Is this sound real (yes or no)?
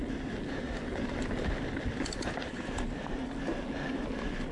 yes